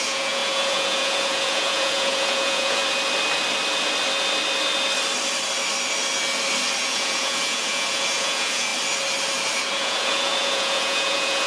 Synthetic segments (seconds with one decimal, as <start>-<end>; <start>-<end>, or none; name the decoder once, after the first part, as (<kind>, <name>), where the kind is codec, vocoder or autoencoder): 0.0-2.8 (vocoder, Vocos); 6.8-8.7; 9.7-11.5